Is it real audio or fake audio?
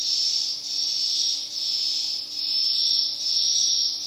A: real